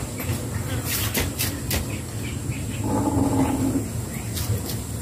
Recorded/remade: recorded